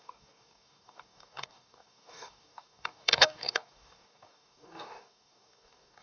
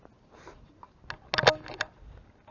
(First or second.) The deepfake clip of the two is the first